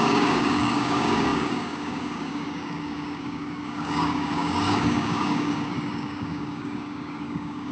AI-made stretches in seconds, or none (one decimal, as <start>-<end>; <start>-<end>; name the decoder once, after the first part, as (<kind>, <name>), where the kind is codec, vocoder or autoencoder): 0.0-7.7 (codec, DAC)